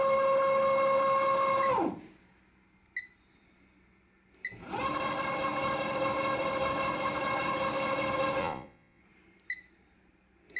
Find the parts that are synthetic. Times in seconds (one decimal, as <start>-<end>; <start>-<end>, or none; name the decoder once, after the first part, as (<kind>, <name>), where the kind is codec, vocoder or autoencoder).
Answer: 8.4-9.0 (vocoder, Vocos)